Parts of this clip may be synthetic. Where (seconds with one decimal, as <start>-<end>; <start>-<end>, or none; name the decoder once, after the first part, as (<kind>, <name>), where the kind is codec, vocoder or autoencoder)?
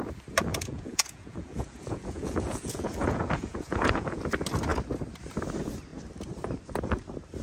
0.5-4.2 (vocoder, Vocos)